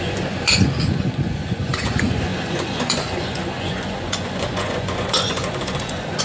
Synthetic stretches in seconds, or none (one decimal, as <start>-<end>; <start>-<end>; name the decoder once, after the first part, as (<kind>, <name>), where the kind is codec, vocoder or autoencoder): 0.0-6.2 (vocoder, Vocos)